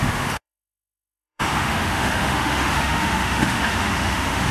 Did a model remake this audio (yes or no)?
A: yes